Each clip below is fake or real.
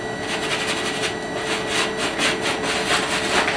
real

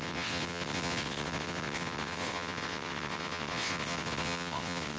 fake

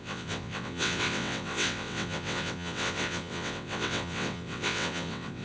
fake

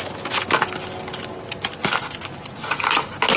real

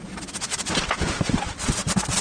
real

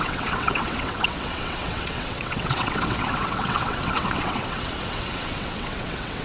fake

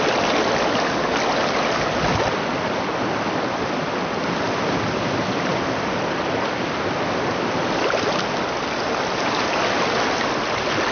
real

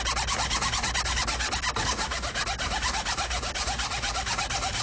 real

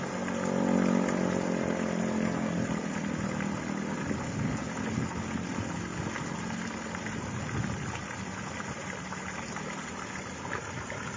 real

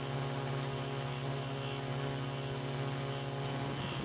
real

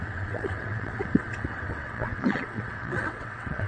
fake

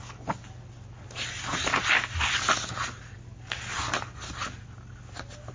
real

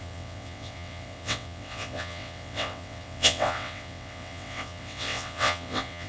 fake